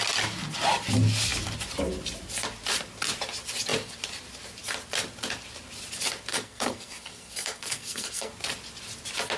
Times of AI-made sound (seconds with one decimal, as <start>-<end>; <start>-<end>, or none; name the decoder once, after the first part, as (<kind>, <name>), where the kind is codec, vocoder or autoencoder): 6.3-8.3 (codec, SNAC)